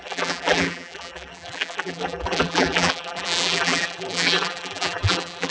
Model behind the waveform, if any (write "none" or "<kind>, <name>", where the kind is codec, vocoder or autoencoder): vocoder, BigVGAN v2